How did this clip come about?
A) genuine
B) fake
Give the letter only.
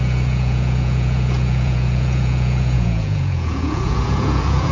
B